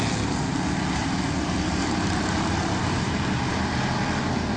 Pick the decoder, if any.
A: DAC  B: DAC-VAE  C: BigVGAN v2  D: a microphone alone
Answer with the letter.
D